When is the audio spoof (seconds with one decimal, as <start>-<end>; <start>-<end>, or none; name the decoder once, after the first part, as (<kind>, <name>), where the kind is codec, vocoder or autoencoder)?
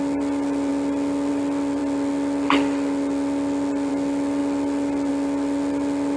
none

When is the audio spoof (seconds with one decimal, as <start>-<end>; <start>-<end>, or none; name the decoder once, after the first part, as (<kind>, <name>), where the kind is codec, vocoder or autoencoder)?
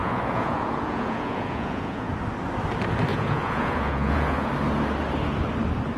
0.0-2.1 (vocoder, Vocos); 3.1-4.5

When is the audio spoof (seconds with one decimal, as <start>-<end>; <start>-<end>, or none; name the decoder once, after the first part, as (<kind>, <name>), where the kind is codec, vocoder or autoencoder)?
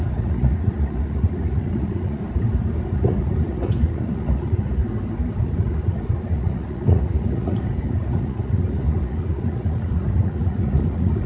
0.0-2.2 (vocoder, Vocos); 2.9-4.8; 5.4-11.3